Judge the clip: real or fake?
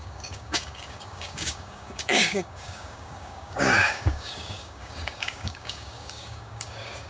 fake